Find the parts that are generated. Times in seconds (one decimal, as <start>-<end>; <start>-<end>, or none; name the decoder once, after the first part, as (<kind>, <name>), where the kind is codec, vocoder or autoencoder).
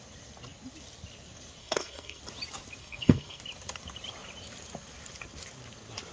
1.6-2.2 (codec, SNAC); 2.8-3.4